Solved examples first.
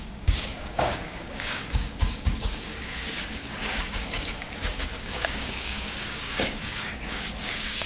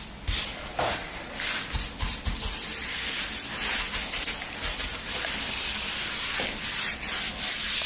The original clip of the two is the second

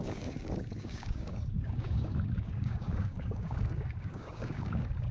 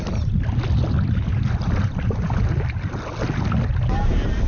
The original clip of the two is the second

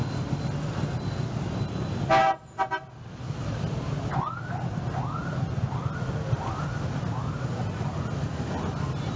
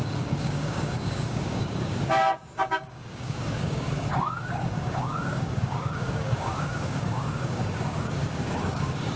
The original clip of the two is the first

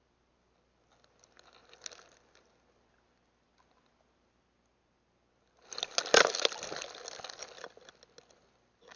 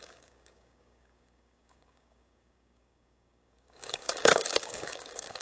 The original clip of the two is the first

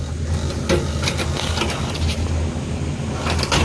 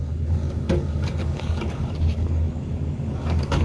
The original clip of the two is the first